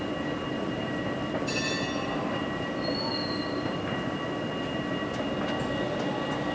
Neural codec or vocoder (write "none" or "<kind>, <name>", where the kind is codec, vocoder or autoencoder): none